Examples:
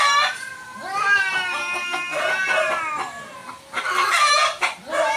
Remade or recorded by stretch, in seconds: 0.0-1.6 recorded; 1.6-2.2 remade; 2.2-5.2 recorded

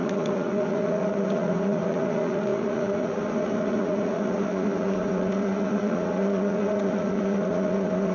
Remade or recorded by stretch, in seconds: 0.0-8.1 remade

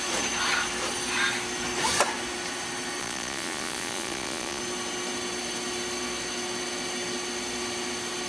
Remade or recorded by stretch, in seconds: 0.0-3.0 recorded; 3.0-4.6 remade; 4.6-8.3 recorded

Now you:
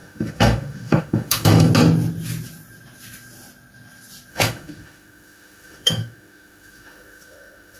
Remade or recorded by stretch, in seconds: 0.0-1.7 remade; 1.7-4.3 recorded; 4.3-7.8 remade

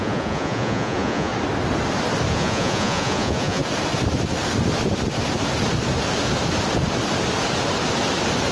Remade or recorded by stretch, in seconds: 0.0-1.3 remade; 1.3-2.3 recorded; 2.3-3.6 remade; 3.6-8.5 recorded